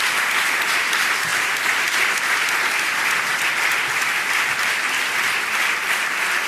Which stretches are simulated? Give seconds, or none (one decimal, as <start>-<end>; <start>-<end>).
none